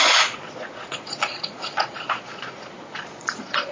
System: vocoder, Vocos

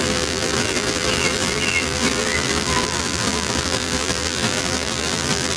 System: vocoder, BigVGAN v2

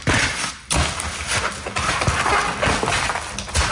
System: none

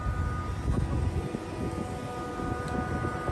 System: none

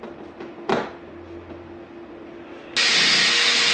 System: none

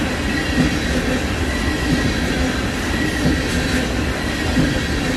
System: none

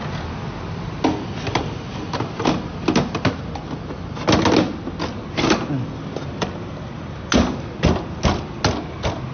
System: none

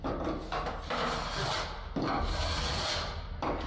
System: none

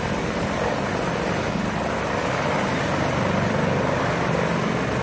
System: none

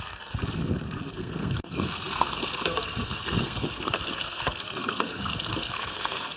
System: codec, SNAC